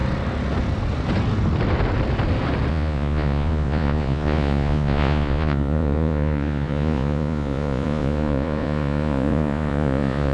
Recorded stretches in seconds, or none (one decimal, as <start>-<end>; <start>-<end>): 0.0-2.7